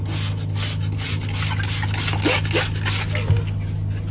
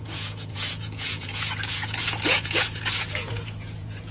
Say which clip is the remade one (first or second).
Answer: second